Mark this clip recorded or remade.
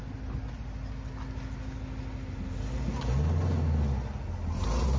recorded